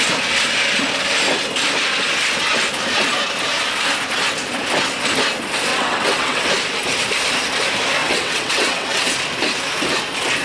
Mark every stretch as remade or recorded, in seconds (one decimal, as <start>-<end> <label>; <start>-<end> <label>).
0.0-5.7 recorded; 5.7-6.5 remade; 6.5-8.0 recorded; 8.0-9.1 remade; 9.1-10.4 recorded